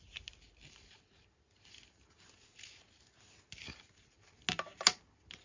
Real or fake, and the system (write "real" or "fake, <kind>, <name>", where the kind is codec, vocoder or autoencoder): real